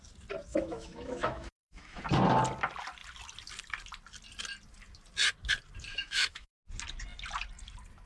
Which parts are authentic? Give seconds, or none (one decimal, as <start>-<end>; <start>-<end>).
0.0-0.5; 2.0-5.9; 6.5-8.1